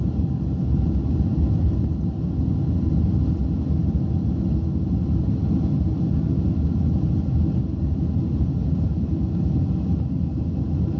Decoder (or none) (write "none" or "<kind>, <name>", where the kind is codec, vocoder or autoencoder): none